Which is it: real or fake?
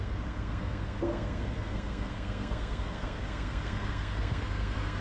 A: fake